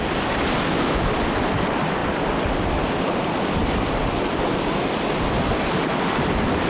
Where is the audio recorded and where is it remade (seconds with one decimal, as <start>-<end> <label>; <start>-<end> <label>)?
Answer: 0.0-2.0 recorded; 2.0-3.1 remade; 3.1-3.6 recorded; 3.6-5.9 remade; 5.9-6.7 recorded